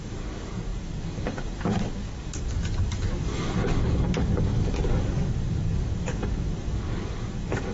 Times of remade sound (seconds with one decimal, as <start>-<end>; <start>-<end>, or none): 0.0-7.7